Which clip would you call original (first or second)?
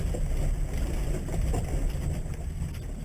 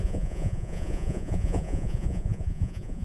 first